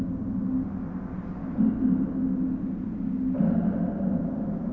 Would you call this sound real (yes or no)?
yes